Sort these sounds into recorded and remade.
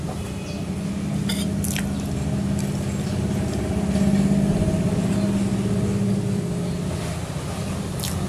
recorded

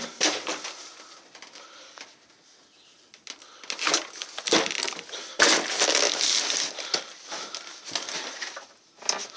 recorded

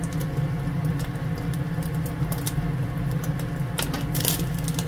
recorded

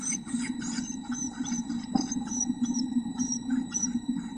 remade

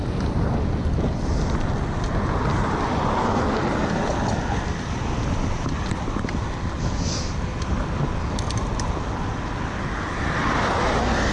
recorded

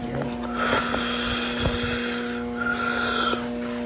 recorded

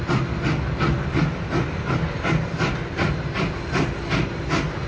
recorded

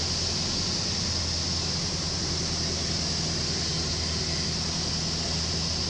recorded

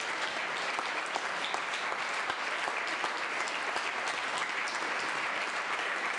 recorded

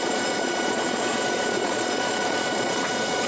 remade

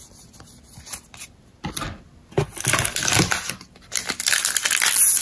recorded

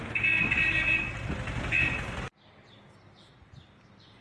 recorded